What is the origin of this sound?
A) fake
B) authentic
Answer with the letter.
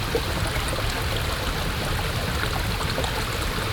B